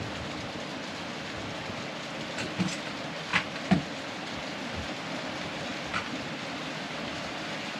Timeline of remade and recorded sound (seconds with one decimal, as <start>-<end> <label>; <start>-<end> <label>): 0.0-7.8 recorded